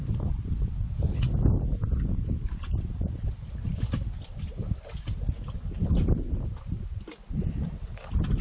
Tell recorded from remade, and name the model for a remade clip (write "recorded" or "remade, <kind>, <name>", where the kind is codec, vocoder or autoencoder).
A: recorded